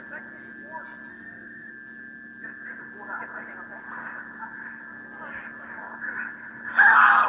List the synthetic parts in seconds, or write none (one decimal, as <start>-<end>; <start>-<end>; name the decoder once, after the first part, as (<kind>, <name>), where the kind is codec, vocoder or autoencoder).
1.1-1.7 (codec, SNAC)